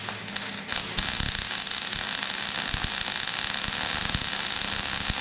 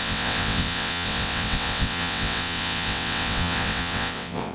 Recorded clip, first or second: first